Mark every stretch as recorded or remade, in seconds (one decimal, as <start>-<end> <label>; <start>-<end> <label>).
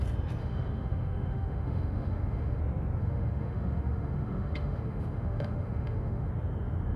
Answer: 0.0-0.4 recorded; 0.4-2.6 remade; 2.6-3.0 recorded; 3.0-6.3 remade; 6.3-7.0 recorded